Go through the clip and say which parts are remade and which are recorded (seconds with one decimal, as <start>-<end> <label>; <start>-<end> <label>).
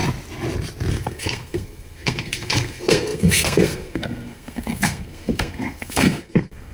0.0-0.9 recorded; 0.9-6.7 remade